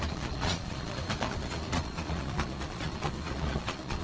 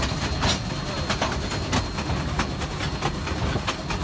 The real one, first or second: second